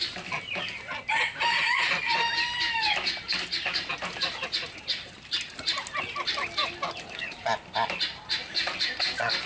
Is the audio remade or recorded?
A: recorded